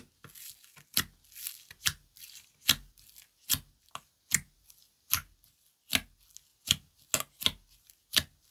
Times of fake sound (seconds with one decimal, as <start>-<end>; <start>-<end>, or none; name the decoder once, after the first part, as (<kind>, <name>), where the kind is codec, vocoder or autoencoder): none